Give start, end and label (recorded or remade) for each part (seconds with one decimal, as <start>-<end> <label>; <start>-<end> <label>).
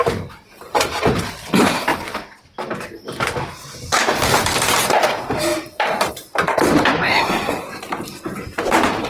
0.0-1.9 remade; 1.9-3.8 recorded; 3.8-9.1 remade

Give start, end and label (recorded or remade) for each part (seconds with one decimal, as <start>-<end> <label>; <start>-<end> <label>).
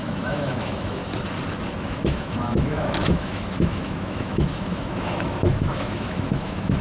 0.0-1.0 remade; 1.0-1.8 recorded; 1.8-6.8 remade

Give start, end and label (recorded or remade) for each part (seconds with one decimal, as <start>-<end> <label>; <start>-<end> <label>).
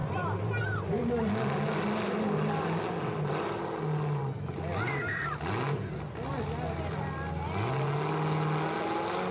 0.0-0.6 remade; 0.6-9.3 recorded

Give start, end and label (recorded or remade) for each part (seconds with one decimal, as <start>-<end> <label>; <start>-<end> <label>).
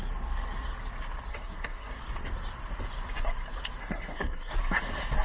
0.0-1.3 recorded; 1.3-2.0 remade; 2.0-3.8 recorded; 3.8-4.5 remade; 4.5-5.2 recorded